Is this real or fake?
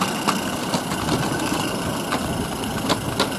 real